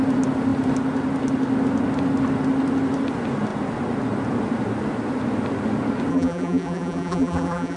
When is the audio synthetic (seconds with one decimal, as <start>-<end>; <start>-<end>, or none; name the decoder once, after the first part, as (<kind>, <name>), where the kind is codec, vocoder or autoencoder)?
6.1-7.8 (vocoder, BigVGAN v2)